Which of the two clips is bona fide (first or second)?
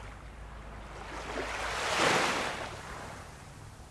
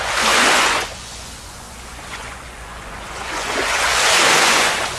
first